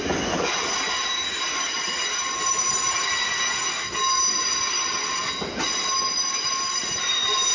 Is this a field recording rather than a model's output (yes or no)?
yes